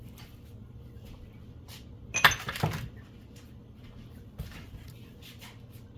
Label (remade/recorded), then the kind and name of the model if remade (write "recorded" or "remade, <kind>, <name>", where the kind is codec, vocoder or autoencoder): recorded